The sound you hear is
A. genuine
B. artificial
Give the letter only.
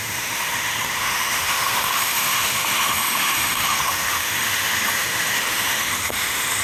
B